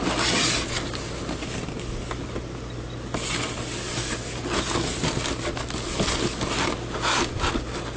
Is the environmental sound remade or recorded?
recorded